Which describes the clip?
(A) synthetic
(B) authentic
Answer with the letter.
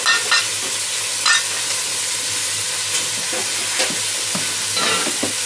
B